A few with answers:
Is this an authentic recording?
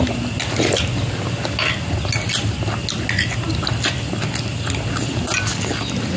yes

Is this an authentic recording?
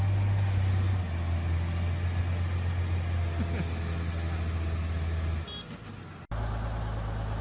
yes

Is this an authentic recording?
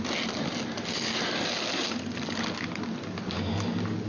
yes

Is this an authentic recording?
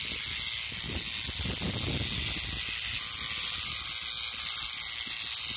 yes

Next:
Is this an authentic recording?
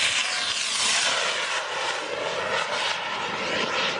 yes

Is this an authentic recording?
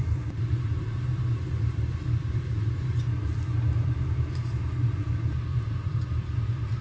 no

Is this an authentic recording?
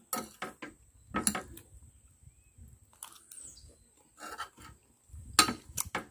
yes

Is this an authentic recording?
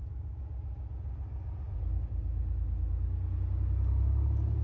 yes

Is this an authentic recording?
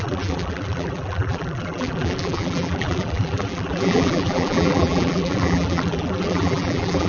no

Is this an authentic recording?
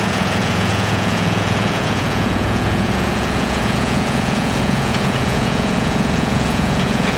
no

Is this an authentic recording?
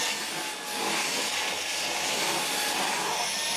yes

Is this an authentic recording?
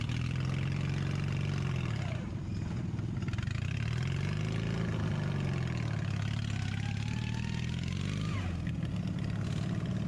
yes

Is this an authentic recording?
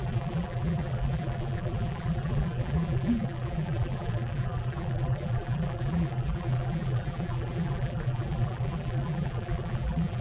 no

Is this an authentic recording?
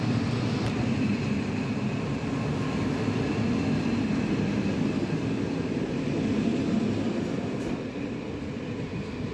yes